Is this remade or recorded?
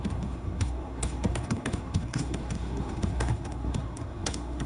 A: remade